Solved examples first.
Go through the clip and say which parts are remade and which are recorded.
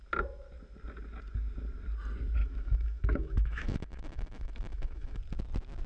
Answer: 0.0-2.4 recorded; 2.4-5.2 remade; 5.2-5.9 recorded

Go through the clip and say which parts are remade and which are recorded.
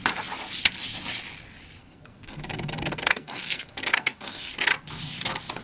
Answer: 0.0-1.8 recorded; 1.8-4.5 remade; 4.5-5.6 recorded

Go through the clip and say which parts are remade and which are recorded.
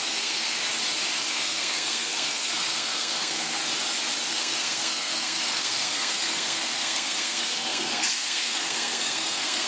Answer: 0.0-0.6 remade; 0.6-1.3 recorded; 1.3-3.6 remade; 3.6-4.3 recorded; 4.3-9.7 remade